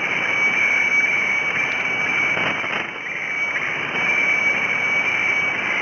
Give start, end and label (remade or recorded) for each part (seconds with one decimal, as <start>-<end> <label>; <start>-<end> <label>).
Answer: 0.0-5.8 recorded